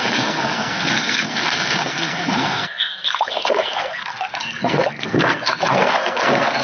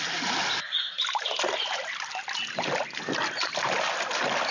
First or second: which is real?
second